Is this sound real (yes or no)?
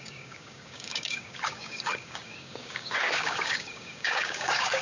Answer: no